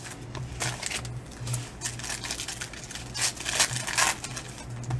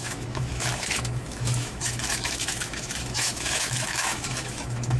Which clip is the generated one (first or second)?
second